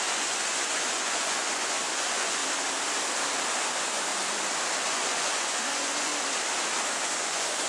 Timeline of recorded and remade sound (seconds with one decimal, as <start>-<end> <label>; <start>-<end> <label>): 0.0-2.4 remade; 2.4-3.6 recorded; 3.6-4.1 remade; 4.1-4.8 recorded; 4.8-6.1 remade; 6.1-6.9 recorded; 6.9-7.7 remade